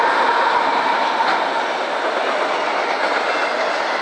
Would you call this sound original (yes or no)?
yes